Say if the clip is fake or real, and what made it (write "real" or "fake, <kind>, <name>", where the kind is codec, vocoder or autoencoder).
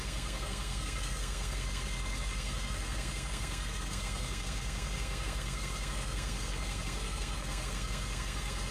fake, codec, SNAC